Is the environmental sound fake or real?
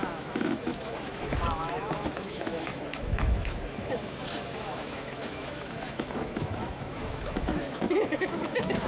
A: fake